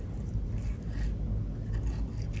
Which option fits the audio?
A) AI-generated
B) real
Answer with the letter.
B